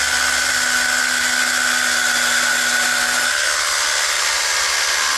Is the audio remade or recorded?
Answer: recorded